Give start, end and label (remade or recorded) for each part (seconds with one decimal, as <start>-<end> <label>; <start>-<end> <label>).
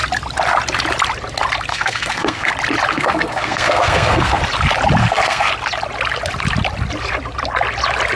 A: 0.0-1.7 recorded; 1.7-2.5 remade; 2.5-2.9 recorded; 2.9-4.4 remade; 4.4-5.0 recorded; 5.0-5.5 remade; 5.5-8.2 recorded